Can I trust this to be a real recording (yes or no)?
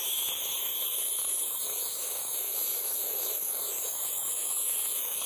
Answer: no